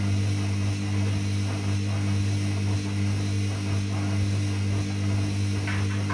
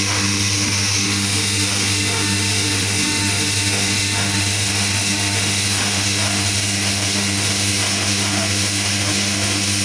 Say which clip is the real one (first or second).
first